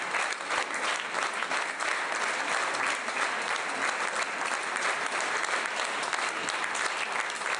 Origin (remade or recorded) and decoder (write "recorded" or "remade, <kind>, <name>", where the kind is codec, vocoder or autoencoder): recorded